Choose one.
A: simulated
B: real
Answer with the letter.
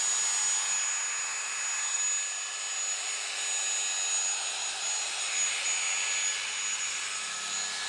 B